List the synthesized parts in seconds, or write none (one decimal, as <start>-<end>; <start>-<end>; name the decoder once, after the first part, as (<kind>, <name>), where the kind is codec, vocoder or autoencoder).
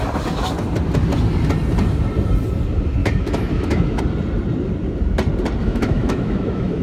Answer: 3.0-4.0 (autoencoder, DAC-VAE); 5.6-6.8